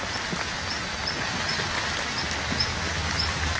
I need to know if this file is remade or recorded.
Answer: recorded